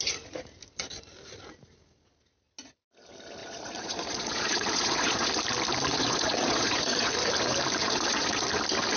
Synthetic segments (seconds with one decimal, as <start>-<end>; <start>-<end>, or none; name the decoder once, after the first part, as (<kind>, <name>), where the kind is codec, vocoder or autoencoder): 3.4-5.3 (vocoder, Vocos); 5.9-7.1; 7.8-8.4